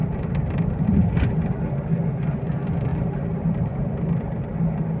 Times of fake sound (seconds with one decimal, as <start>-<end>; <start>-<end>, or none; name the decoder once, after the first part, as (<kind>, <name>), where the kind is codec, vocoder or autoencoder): 0.0-1.5 (vocoder, BigVGAN v2); 2.9-4.6